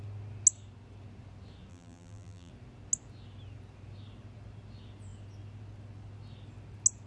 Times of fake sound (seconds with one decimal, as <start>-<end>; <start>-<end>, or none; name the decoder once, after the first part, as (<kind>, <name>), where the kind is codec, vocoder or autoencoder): 1.7-2.5 (vocoder, BigVGAN v2)